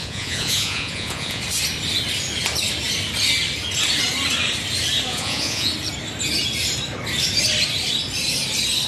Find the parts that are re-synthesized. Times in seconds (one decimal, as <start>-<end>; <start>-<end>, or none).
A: 0.0-1.4; 5.1-5.7